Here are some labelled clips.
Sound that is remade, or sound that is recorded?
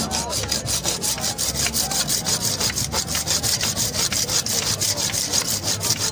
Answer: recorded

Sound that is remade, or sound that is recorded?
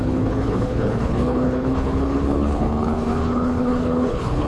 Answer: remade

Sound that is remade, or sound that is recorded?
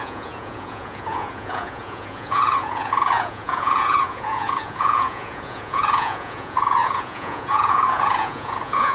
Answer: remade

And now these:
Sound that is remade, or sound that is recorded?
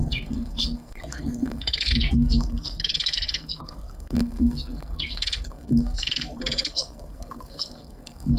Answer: remade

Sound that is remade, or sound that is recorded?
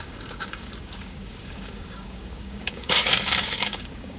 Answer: remade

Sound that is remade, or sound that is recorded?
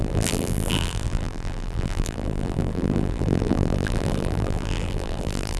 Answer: remade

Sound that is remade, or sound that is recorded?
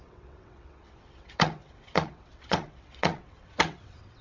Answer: remade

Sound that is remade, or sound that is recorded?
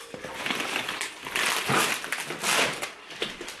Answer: recorded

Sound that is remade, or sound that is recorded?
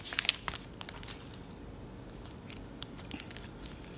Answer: recorded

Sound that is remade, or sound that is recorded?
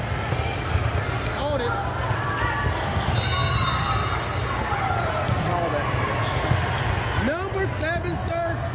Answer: recorded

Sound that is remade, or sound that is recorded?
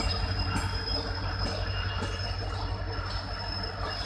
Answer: recorded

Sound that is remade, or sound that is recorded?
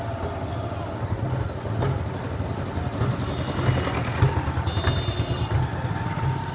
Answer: recorded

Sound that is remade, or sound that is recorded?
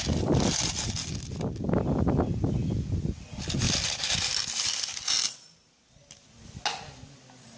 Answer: recorded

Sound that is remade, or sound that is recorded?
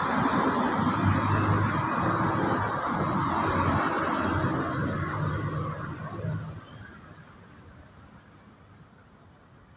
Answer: recorded